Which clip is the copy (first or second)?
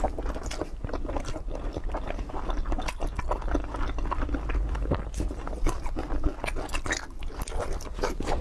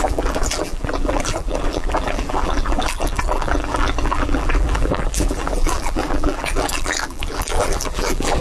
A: second